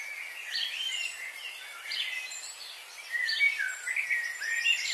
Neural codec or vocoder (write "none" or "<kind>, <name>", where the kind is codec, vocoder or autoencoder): none